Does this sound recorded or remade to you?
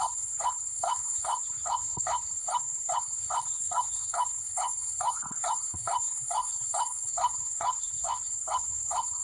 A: remade